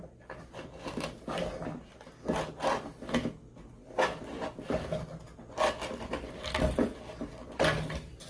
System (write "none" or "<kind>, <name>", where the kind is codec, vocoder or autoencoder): none